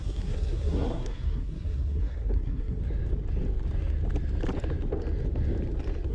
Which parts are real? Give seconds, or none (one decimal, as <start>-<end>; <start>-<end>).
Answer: 2.8-6.1